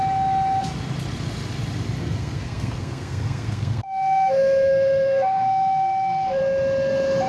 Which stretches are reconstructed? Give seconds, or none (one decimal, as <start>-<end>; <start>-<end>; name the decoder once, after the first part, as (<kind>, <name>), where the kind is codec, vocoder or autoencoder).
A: 2.0-6.4 (codec, SNAC)